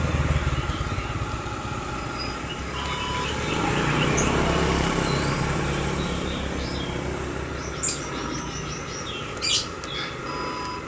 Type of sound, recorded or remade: recorded